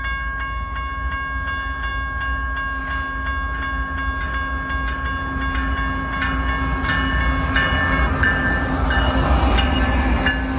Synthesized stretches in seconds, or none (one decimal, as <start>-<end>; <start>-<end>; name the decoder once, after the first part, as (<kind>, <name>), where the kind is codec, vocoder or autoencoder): none